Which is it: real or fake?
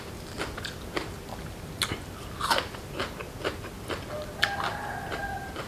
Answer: real